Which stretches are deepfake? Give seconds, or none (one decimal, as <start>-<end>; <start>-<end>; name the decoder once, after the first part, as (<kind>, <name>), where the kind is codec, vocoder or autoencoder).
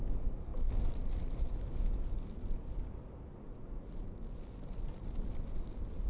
3.3-4.0 (vocoder, Vocos)